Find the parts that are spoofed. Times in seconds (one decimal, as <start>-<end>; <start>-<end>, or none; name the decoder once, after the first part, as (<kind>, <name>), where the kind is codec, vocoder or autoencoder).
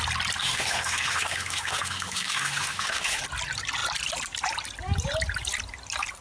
0.4-3.2 (autoencoder, DAC-VAE)